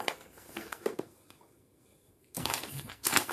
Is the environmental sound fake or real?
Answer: fake